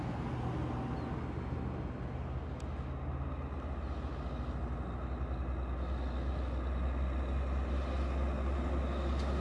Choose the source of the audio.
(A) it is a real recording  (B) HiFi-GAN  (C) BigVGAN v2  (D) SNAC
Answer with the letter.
A